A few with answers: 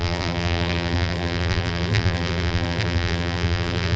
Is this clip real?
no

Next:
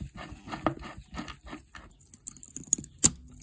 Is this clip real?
yes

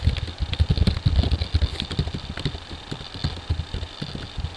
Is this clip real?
yes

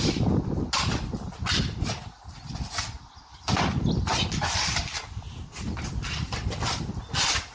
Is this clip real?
yes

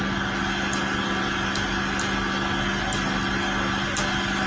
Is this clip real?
yes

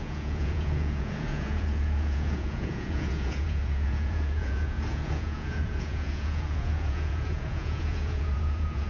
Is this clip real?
no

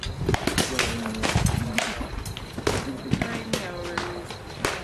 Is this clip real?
yes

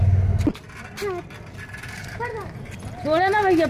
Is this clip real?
yes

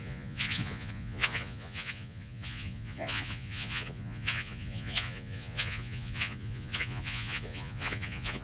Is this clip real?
no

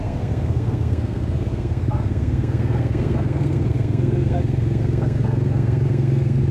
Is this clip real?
no